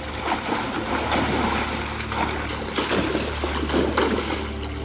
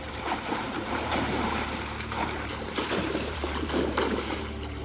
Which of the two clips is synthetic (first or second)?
second